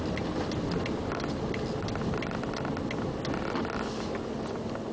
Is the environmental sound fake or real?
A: real